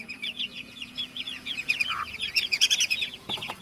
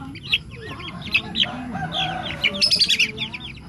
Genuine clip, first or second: second